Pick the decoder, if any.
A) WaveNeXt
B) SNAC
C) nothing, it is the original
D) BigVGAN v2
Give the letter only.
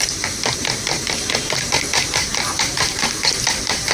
D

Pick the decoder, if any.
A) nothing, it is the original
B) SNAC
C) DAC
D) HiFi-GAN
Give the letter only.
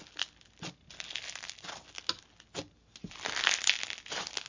A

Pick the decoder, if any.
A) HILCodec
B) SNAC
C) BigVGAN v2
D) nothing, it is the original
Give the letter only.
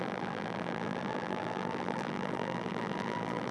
C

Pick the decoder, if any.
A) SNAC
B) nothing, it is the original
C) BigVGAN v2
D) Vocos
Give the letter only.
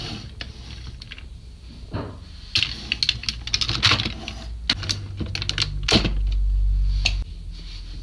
B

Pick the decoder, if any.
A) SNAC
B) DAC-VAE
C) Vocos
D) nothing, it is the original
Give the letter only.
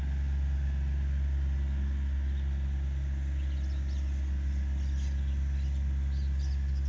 D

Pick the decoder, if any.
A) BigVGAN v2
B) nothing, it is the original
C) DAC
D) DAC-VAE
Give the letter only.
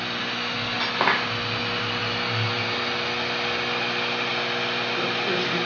B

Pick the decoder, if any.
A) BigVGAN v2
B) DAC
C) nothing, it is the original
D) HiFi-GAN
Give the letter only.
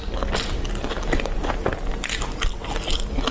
C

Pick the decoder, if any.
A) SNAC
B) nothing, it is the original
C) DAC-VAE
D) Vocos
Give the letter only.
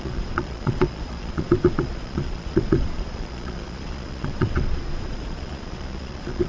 D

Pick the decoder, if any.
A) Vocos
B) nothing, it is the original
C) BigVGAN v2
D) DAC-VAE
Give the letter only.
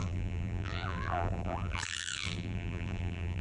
C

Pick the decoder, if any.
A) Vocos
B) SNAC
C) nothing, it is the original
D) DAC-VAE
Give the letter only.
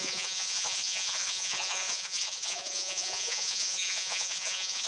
A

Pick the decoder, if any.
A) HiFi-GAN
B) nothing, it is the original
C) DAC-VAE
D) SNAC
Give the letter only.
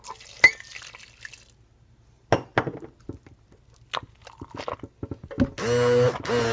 B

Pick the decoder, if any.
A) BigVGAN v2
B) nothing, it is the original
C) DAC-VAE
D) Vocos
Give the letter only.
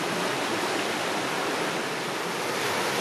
B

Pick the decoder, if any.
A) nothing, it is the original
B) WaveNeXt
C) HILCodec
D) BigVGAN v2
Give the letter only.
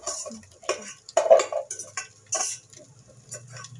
A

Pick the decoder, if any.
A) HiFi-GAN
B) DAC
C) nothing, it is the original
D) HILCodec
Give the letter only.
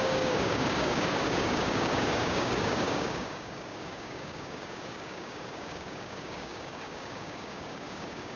B